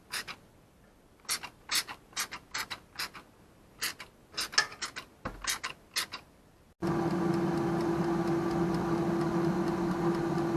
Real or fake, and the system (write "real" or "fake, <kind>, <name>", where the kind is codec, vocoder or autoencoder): real